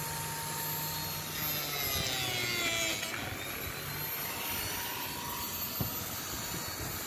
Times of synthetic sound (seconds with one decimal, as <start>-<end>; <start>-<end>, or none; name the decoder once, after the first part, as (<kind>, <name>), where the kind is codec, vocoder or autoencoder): none